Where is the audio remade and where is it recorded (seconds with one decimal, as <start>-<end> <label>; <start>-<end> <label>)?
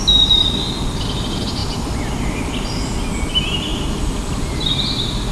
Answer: 0.0-5.3 recorded